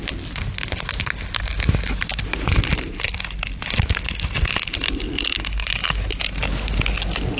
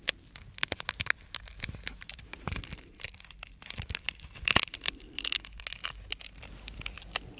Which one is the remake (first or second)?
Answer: second